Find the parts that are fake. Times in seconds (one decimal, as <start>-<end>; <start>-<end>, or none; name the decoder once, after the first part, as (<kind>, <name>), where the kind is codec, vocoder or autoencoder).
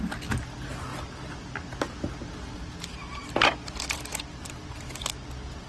none